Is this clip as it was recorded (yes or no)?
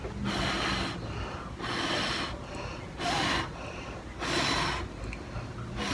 yes